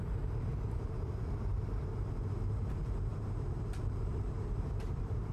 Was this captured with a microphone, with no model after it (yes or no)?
no